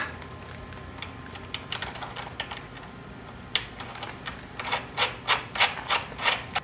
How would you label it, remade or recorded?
recorded